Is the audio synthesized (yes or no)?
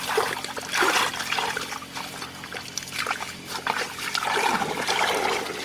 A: yes